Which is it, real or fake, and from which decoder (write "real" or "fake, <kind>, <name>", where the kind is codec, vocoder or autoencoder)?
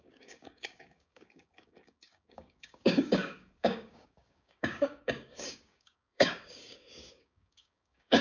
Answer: fake, codec, DAC